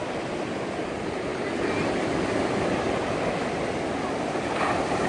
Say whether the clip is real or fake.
real